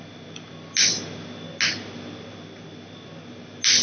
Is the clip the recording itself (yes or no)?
yes